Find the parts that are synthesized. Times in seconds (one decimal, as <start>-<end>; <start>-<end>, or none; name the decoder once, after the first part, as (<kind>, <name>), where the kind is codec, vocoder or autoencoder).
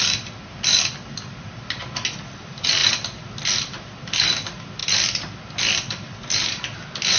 none